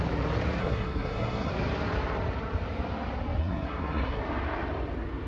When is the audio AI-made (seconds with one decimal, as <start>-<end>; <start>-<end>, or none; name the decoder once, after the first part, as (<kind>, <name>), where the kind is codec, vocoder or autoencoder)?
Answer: 0.6-1.5 (codec, SNAC); 3.4-4.2